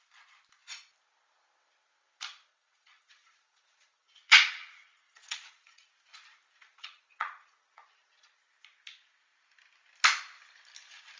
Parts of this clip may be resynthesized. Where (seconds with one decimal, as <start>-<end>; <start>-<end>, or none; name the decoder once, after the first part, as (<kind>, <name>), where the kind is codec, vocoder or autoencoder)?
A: 2.5-5.9 (vocoder, Vocos); 6.6-8.5